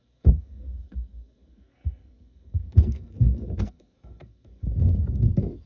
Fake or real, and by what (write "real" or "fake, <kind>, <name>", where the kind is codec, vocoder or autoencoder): fake, codec, SNAC